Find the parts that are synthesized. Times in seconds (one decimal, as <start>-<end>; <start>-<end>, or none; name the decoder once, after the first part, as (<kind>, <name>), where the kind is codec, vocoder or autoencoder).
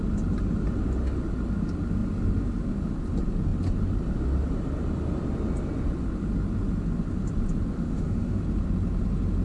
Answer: 7.7-8.4 (autoencoder, DAC-VAE)